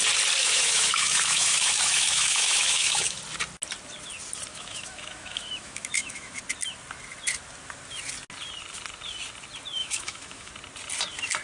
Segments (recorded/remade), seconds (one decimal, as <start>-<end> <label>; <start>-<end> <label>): 0.0-0.4 recorded; 0.4-3.2 remade; 3.2-4.5 recorded; 4.5-6.4 remade; 6.4-9.8 recorded; 9.8-10.5 remade; 10.5-11.4 recorded